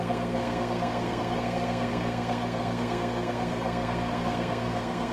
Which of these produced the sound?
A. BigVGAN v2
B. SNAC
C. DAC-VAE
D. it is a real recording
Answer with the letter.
B